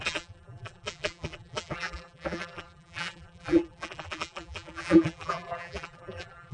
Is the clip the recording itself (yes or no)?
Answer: no